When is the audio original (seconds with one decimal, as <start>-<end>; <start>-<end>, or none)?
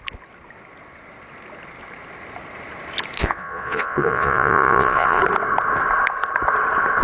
0.0-3.2; 5.2-7.0